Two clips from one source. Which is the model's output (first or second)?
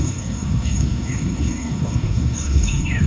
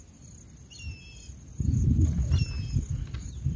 first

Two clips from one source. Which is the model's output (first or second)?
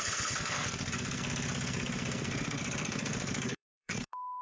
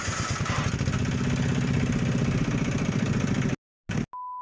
first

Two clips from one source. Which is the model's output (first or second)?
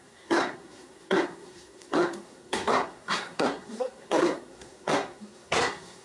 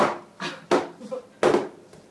first